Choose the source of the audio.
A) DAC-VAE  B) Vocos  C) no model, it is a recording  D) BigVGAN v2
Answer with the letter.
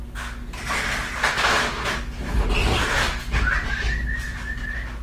C